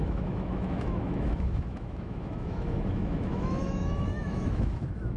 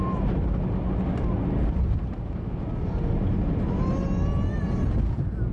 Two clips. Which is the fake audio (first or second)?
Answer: first